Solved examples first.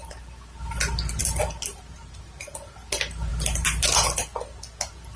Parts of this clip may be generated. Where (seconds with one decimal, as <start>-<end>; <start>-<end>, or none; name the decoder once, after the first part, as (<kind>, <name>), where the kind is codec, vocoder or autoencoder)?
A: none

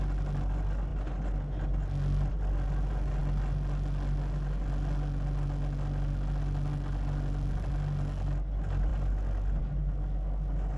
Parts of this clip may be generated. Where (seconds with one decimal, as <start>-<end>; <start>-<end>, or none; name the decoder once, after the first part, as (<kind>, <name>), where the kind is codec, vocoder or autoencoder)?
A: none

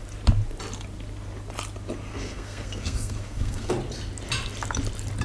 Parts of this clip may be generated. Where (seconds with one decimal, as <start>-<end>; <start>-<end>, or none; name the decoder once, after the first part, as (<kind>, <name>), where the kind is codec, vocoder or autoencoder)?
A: 2.1-3.7 (codec, SNAC)